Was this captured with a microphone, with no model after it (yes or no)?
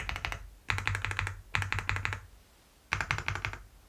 yes